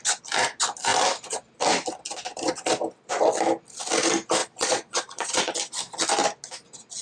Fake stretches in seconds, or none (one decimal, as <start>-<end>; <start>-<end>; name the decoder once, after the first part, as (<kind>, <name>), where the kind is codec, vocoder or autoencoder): 4.4-5.4 (vocoder, Vocos)